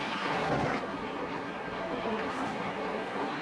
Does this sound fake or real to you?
fake